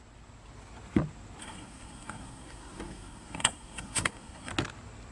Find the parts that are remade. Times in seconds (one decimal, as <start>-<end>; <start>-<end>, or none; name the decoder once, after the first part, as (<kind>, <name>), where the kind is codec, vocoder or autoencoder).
1.4-4.5 (codec, SNAC)